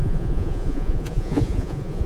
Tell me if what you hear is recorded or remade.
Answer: remade